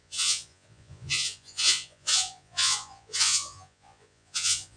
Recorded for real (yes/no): no